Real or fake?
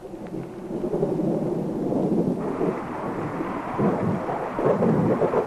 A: real